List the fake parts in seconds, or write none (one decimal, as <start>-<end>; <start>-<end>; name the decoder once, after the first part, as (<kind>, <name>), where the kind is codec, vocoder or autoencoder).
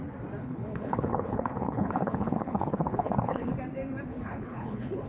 0.4-3.5 (codec, HILCodec); 4.1-5.1